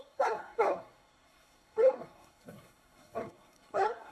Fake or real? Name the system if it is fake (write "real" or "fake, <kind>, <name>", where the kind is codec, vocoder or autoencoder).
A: fake, codec, SNAC